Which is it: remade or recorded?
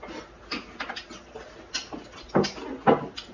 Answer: recorded